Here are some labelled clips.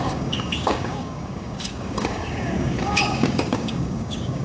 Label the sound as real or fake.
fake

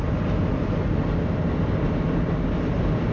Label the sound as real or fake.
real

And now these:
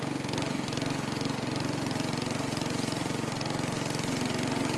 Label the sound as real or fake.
real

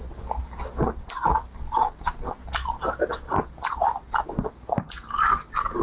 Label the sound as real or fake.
real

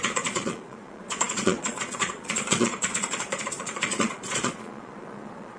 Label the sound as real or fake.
fake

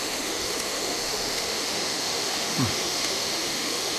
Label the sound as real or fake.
fake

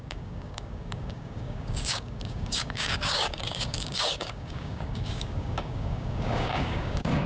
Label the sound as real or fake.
fake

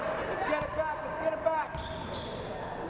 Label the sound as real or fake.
real